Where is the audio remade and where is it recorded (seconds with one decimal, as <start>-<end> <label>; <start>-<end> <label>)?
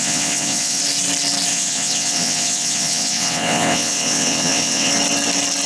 0.0-0.8 remade; 0.8-1.5 recorded; 1.5-4.9 remade; 4.9-5.7 recorded